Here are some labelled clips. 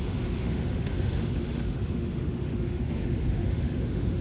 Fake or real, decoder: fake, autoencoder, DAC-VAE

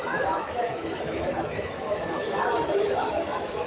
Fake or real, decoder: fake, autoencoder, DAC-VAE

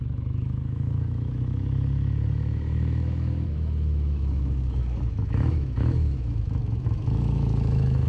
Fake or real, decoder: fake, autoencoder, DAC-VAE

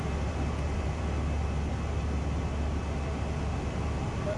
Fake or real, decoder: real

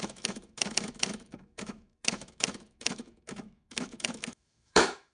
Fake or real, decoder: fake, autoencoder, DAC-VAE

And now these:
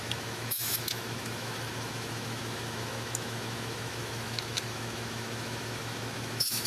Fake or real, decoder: fake, autoencoder, DAC-VAE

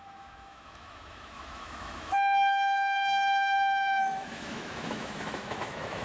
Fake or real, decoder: fake, autoencoder, DAC-VAE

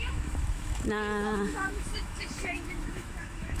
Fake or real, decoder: fake, autoencoder, DAC-VAE